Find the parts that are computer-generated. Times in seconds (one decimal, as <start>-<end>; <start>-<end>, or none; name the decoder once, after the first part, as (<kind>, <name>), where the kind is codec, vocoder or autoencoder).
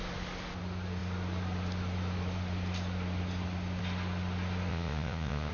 4.7-5.5 (vocoder, Vocos)